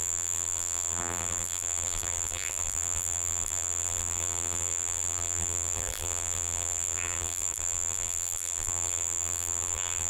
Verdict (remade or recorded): remade